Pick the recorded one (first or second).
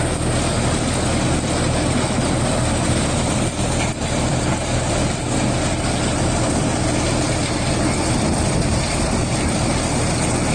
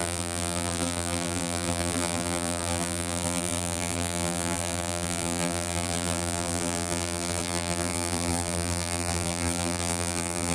first